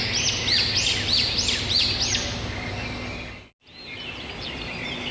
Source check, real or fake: real